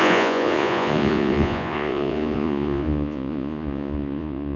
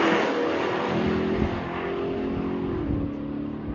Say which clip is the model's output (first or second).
first